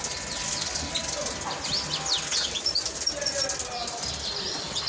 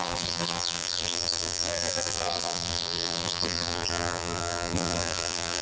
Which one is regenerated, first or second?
second